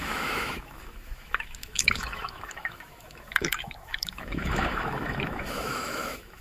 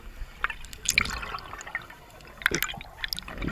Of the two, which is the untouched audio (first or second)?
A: second